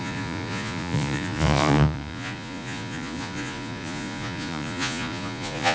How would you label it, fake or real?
fake